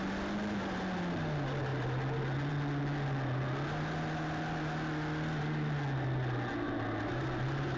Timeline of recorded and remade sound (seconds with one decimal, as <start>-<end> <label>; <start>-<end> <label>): 0.0-7.8 recorded